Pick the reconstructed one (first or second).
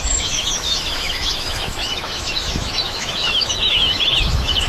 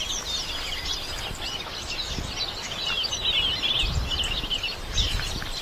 first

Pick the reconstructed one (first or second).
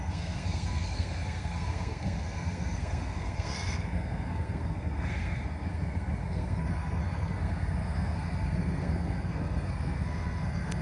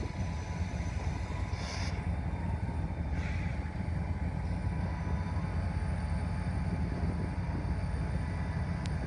first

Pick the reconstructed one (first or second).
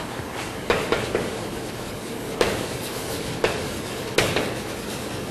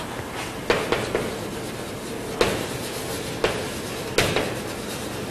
first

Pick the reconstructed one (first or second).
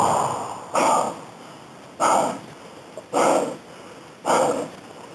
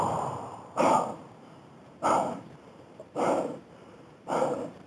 second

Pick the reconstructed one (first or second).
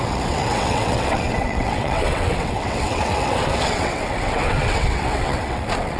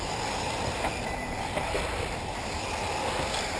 first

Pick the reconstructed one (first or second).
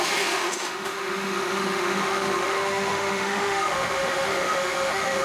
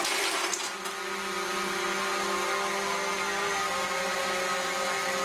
first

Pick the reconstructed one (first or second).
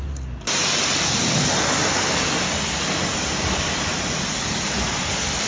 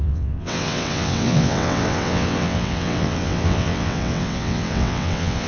second